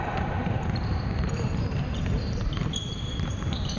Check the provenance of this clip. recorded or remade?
remade